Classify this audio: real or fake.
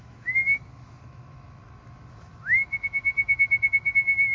fake